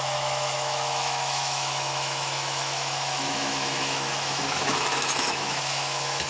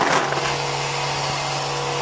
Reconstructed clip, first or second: first